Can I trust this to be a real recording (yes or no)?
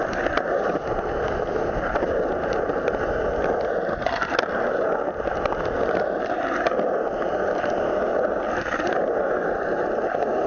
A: yes